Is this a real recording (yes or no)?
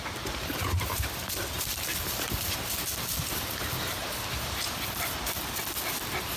yes